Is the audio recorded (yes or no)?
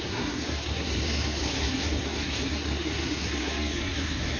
no